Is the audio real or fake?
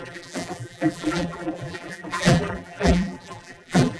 fake